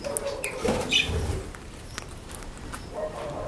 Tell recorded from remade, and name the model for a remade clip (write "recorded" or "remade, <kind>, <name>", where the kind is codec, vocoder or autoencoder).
recorded